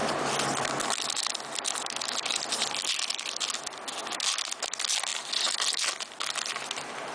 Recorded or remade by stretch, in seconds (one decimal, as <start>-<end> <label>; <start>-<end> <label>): 0.0-7.1 recorded